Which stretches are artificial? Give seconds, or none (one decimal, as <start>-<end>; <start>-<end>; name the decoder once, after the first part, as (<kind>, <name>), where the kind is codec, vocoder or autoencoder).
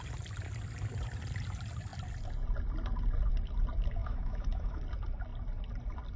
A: 4.0-4.8 (autoencoder, DAC-VAE)